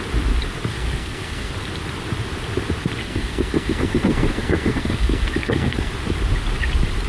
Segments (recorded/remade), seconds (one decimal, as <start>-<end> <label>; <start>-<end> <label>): 0.0-0.7 recorded; 0.7-1.5 remade; 1.5-3.0 recorded; 3.0-5.9 remade; 5.9-7.1 recorded